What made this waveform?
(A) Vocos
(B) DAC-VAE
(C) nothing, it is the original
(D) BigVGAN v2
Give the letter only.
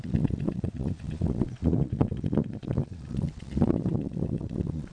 A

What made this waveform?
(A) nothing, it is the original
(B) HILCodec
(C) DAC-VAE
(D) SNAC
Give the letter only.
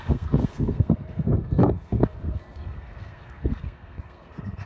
D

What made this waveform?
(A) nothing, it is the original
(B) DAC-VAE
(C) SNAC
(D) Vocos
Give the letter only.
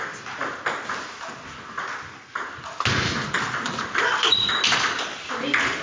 A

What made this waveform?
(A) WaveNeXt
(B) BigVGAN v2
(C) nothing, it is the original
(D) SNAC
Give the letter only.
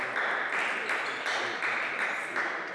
C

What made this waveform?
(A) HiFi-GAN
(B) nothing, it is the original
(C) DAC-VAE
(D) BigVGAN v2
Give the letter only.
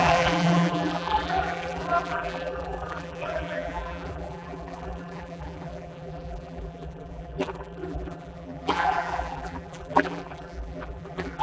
D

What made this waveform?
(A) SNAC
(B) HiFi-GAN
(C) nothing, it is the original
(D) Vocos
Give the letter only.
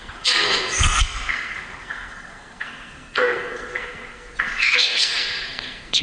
A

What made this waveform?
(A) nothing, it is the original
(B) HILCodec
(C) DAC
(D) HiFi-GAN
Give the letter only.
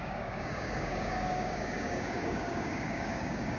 C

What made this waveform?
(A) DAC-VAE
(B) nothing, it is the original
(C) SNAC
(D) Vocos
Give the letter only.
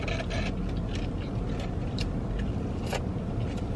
B